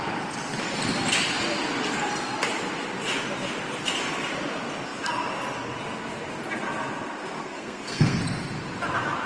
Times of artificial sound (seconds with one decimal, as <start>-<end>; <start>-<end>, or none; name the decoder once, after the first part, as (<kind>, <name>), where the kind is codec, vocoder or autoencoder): 7.4-8.2 (codec, SNAC)